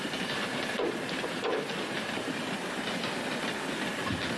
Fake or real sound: real